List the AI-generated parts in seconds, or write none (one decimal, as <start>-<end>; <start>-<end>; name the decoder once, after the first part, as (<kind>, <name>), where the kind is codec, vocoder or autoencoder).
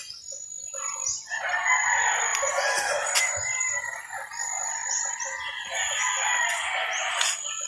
2.3-3.7 (vocoder, BigVGAN v2)